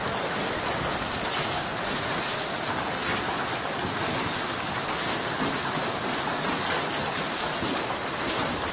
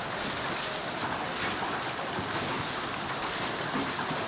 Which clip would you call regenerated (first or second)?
first